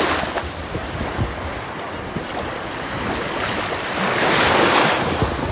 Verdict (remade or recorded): recorded